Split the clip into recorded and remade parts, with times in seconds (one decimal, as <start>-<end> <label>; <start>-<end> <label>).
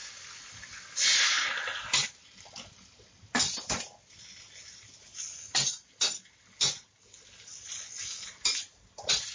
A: 0.0-9.3 recorded